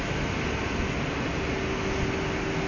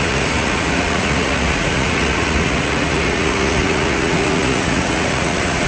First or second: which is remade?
second